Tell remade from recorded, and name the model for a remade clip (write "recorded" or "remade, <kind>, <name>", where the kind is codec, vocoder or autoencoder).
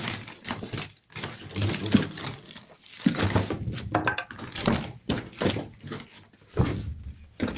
recorded